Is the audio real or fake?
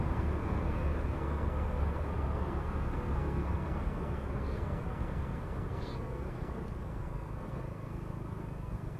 fake